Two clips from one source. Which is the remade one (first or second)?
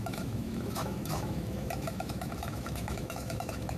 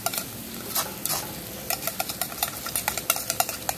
first